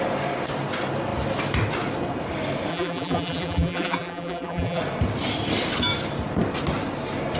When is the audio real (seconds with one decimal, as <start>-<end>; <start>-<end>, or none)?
0.0-2.7; 4.8-7.4